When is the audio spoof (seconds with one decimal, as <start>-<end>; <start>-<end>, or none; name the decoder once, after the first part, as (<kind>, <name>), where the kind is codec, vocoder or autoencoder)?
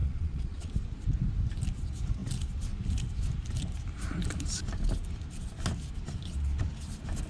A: 0.0-0.7 (vocoder, Vocos)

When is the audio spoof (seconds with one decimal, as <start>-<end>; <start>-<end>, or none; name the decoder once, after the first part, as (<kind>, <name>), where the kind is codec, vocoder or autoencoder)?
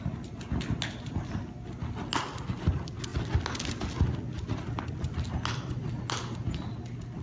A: none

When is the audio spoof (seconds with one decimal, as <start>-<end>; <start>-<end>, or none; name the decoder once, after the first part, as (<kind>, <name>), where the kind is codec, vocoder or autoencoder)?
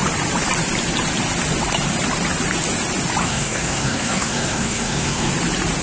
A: 3.2-5.3 (codec, SNAC)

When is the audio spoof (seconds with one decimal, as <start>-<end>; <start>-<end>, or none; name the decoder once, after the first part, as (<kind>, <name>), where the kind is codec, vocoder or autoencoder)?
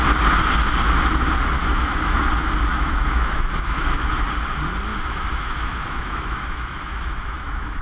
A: 1.6-2.2 (autoencoder, DAC-VAE); 2.7-4.1; 4.9-7.8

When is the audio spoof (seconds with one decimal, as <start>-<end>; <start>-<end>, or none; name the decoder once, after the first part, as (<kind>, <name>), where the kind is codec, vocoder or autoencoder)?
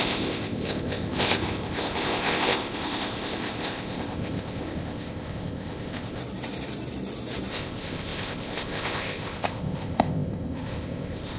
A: 0.0-6.2 (codec, ZipCodec); 7.5-11.4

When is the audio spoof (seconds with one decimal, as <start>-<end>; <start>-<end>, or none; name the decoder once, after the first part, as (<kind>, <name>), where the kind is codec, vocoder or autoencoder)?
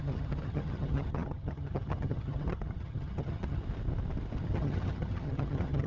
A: 0.0-3.6 (vocoder, HiFi-GAN); 4.4-5.9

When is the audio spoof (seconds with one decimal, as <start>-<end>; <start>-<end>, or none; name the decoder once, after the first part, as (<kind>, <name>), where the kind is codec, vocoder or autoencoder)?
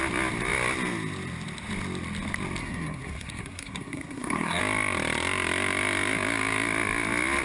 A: 2.6-4.6 (codec, SNAC)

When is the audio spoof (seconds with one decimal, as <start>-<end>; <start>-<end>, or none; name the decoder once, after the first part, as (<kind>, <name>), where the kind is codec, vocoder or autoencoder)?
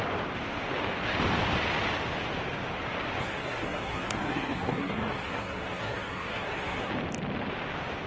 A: 3.2-6.9 (codec, SNAC)